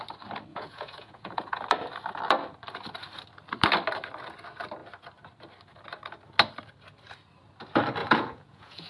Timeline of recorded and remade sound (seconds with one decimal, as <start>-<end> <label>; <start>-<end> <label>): 0.0-0.5 recorded; 0.5-1.6 remade; 1.6-8.0 recorded; 8.0-8.9 remade